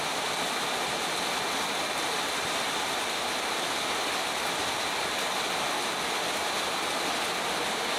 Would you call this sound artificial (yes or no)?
no